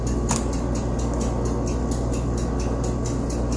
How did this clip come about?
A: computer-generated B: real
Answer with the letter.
B